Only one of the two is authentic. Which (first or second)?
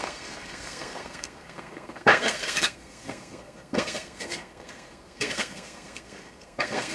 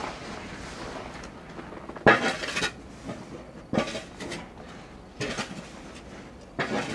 second